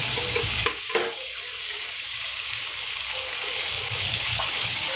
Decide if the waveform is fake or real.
fake